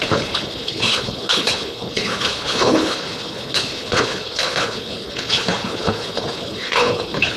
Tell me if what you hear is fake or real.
fake